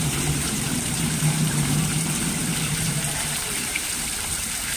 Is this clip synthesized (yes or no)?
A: yes